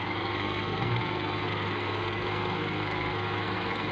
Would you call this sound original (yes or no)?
no